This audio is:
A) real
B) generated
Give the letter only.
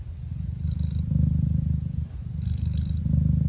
A